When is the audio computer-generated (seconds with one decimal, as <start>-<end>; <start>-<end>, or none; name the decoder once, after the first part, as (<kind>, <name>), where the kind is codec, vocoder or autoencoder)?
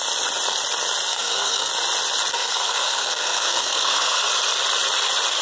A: 1.1-1.7 (codec, SNAC); 2.3-4.3